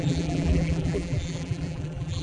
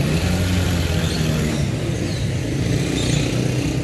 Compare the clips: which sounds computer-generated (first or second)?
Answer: first